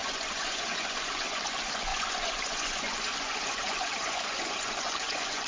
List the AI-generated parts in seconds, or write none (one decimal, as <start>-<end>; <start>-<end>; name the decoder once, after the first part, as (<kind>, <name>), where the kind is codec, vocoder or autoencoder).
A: 0.0-5.5 (vocoder, Vocos)

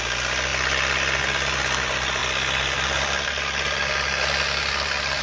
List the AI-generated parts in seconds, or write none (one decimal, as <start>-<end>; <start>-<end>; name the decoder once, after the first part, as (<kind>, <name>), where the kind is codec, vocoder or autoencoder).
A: none

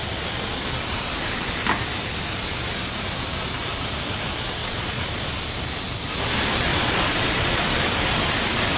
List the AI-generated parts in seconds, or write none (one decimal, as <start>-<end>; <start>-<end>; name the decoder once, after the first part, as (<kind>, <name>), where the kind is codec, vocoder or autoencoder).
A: 4.6-5.2 (vocoder, Vocos); 6.7-7.6

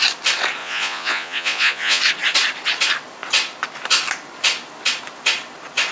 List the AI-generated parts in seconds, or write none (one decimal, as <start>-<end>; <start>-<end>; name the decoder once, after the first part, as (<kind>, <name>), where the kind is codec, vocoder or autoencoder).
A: 0.6-2.0 (vocoder, Vocos)